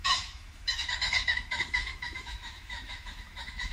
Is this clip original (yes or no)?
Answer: no